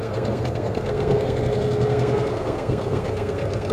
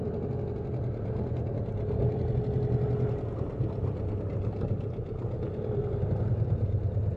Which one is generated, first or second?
first